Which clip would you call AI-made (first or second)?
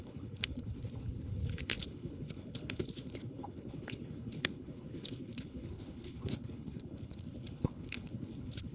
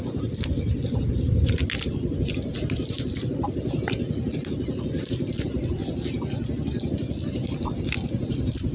first